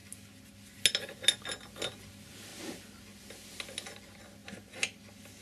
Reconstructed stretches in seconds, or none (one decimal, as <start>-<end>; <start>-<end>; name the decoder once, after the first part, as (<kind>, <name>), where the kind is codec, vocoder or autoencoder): none